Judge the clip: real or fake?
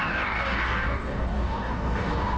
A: fake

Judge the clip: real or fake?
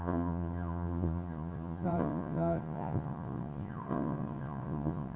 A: fake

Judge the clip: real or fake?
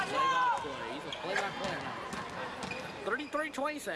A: real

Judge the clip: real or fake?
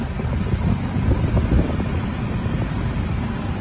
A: real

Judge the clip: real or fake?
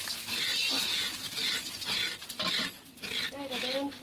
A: real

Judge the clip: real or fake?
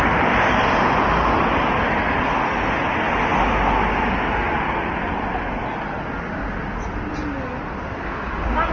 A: real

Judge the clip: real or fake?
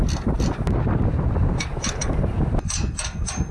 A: real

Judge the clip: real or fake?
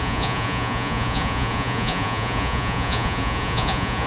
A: fake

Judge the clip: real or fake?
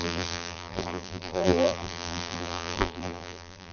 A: fake